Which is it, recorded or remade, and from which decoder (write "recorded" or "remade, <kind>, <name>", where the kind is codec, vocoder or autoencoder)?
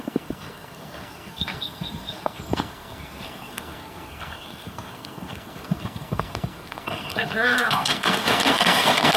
remade, codec, SNAC